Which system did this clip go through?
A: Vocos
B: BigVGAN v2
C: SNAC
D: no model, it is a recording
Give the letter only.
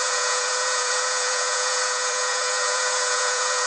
A